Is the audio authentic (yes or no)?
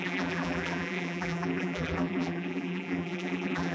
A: no